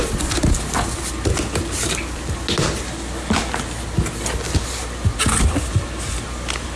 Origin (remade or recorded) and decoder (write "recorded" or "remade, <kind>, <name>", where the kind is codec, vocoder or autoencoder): recorded